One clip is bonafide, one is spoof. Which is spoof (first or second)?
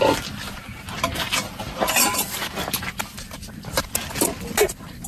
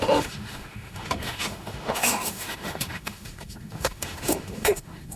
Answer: second